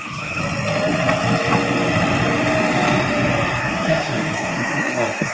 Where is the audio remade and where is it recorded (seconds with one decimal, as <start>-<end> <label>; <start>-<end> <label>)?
0.0-0.4 remade; 0.4-3.6 recorded; 3.6-5.3 remade